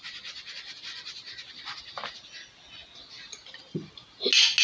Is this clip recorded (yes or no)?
yes